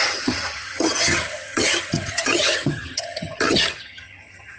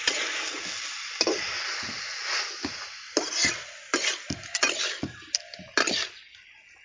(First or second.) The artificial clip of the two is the first